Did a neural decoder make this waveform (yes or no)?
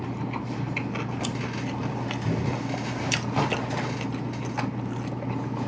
no